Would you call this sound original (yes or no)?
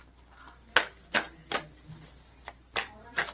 yes